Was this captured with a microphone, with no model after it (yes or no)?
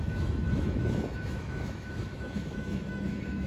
no